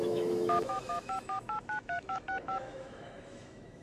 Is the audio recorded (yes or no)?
no